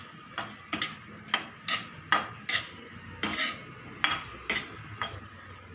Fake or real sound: real